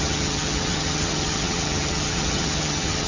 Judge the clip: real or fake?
fake